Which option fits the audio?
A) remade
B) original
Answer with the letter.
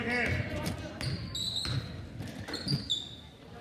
B